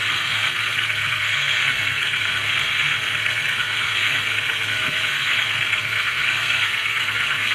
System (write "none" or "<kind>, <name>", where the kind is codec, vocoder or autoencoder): codec, SNAC